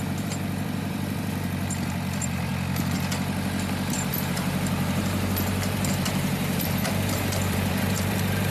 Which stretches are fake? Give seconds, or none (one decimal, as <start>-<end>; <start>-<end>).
0.0-2.5; 4.1-8.5